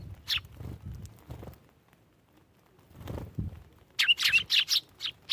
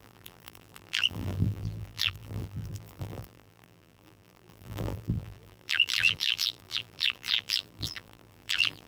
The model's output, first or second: second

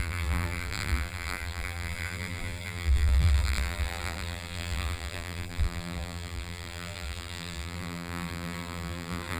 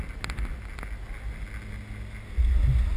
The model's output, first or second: first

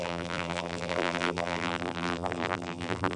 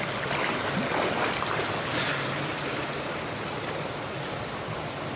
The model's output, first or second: first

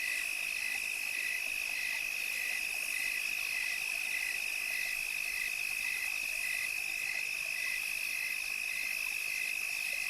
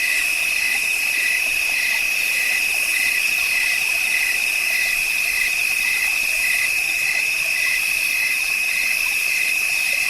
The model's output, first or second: second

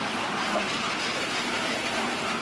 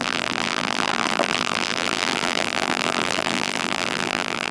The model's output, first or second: second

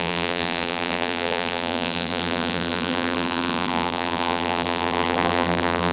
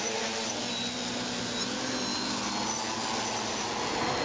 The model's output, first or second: first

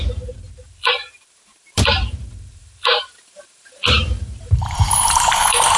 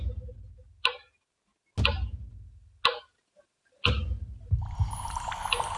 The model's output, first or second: first